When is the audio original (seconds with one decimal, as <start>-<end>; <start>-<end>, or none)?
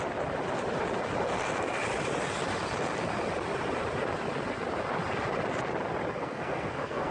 0.0-6.2